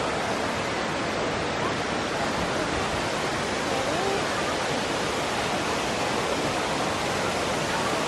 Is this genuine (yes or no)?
yes